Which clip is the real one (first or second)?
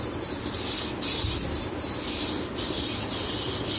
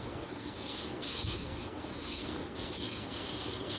first